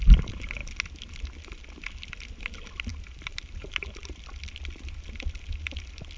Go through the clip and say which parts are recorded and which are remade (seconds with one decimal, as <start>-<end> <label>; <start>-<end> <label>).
0.0-2.9 recorded; 2.9-4.2 remade; 4.2-6.2 recorded